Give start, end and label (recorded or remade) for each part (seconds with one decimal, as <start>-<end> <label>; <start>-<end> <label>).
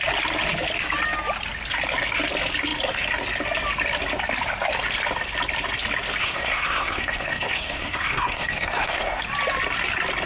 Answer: 0.0-6.2 recorded; 6.2-9.2 remade; 9.2-10.3 recorded